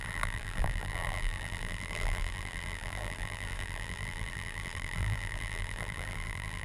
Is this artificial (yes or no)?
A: yes